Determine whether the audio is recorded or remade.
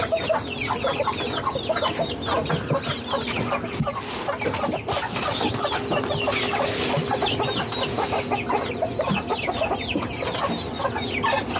recorded